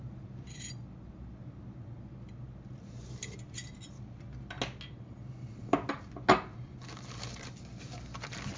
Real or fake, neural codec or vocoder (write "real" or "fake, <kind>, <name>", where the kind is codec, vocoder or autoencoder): real